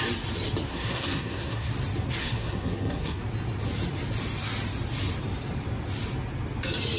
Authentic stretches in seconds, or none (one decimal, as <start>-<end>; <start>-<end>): 0.0-0.7; 1.7-2.2; 3.2-7.0